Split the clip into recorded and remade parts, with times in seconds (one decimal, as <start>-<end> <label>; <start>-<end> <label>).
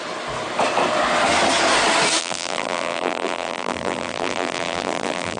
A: 0.0-2.2 recorded; 2.2-5.4 remade